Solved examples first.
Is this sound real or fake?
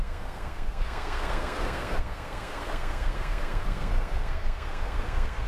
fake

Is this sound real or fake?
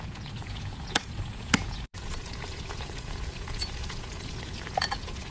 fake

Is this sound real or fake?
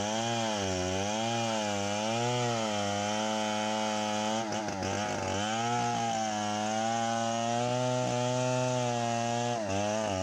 real